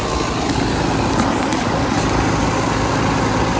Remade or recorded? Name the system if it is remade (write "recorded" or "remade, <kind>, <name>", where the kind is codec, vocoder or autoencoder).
recorded